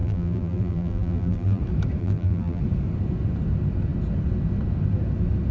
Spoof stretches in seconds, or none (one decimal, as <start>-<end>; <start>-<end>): 0.0-1.6; 2.0-2.6